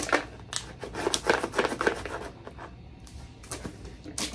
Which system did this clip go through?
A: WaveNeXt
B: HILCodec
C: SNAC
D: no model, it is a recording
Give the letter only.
D